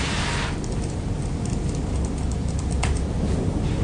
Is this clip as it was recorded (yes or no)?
yes